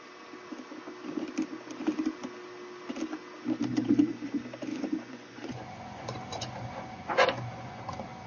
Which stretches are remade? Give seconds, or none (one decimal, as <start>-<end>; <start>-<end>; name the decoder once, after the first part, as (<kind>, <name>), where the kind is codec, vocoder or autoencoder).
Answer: 3.7-4.3 (vocoder, Vocos); 4.7-7.8